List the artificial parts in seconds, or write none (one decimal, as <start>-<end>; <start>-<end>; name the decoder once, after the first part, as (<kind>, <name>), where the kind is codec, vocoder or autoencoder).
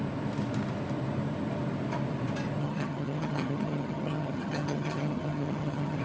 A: 2.6-6.0 (vocoder, HiFi-GAN)